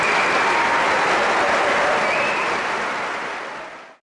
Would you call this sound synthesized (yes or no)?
no